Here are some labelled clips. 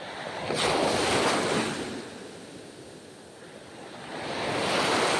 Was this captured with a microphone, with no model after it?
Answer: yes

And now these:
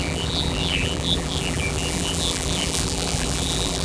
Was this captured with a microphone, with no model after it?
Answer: no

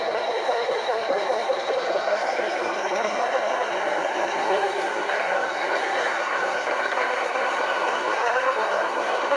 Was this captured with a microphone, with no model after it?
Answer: no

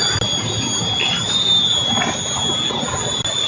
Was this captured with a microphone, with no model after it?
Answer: yes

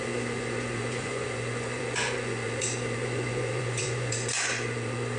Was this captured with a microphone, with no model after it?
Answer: no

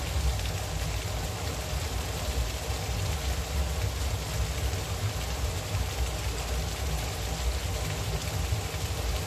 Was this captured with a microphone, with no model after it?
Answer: yes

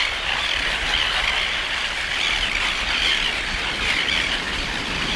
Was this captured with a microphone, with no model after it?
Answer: no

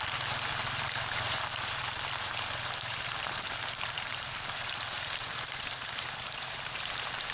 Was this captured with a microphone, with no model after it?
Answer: no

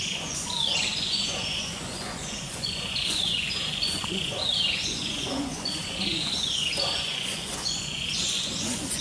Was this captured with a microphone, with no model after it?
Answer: no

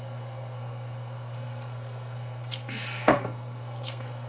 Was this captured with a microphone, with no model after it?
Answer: no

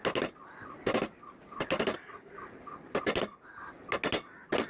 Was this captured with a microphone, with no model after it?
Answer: yes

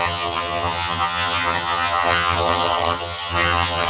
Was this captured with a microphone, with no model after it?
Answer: no